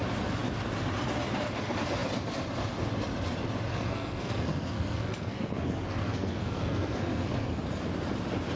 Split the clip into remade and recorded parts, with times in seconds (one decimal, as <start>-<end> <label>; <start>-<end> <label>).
0.0-3.7 recorded; 3.7-7.6 remade; 7.6-8.6 recorded

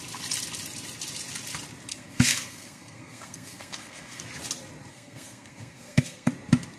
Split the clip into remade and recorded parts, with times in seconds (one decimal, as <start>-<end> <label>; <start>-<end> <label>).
0.0-1.9 recorded; 1.9-4.2 remade; 4.2-4.9 recorded; 4.9-6.3 remade; 6.3-6.8 recorded

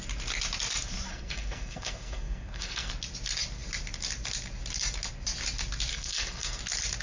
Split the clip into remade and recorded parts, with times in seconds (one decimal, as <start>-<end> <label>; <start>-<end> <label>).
0.0-1.1 recorded; 1.1-2.9 remade; 2.9-5.9 recorded; 5.9-6.6 remade; 6.6-7.0 recorded

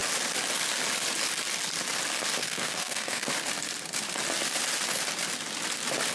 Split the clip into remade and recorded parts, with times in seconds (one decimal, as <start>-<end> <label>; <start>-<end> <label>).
0.0-2.4 recorded; 2.4-3.3 remade; 3.3-6.1 recorded